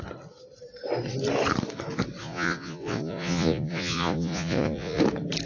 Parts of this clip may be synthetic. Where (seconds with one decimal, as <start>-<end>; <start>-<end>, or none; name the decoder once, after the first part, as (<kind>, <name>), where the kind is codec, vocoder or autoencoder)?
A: 2.2-5.0 (vocoder, Vocos)